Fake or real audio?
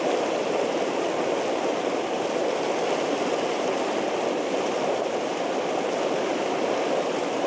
real